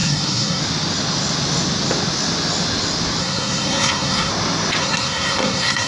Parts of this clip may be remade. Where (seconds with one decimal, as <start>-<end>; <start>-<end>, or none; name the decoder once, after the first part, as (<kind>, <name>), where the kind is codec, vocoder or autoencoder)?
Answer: 0.0-0.6 (codec, SNAC); 3.2-4.3; 4.8-5.9